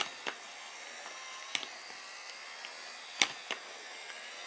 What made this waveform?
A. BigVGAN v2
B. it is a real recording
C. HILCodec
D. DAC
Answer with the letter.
B